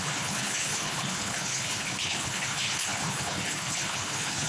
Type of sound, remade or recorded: remade